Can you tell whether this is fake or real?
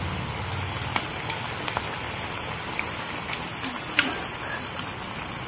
real